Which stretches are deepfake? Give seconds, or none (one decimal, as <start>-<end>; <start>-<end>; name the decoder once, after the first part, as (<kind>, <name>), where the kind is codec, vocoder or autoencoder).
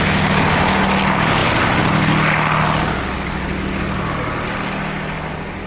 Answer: none